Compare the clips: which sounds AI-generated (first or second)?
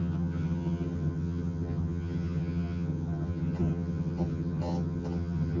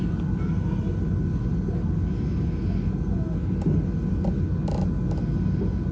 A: first